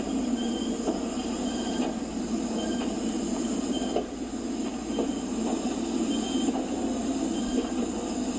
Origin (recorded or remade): recorded